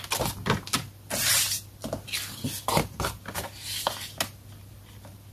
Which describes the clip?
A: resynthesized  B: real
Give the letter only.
B